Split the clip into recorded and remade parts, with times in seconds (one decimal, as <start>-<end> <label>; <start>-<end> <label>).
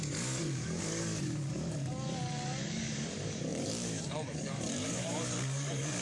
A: 0.0-6.0 remade